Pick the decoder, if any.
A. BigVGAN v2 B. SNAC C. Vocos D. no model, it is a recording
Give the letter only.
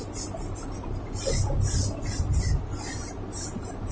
D